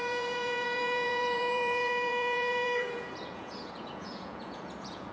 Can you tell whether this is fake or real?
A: fake